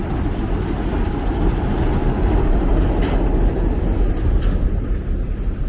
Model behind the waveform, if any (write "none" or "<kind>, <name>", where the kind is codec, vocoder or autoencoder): none